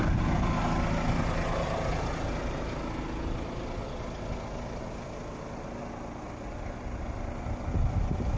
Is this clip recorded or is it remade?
recorded